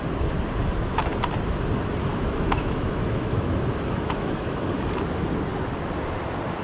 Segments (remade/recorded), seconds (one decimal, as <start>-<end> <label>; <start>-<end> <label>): 0.0-2.1 recorded; 2.1-4.6 remade; 4.6-6.6 recorded